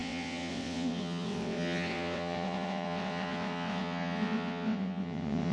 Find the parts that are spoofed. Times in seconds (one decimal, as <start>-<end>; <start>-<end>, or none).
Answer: 0.0-5.5